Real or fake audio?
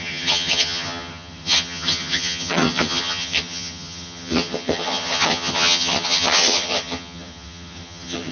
fake